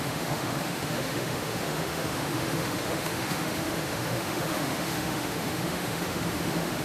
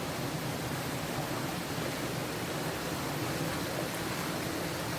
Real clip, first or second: second